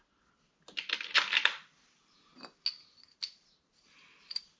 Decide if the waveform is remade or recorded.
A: recorded